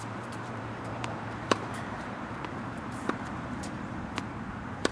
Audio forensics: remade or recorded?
remade